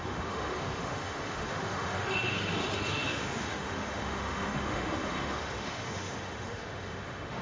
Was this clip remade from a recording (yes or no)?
yes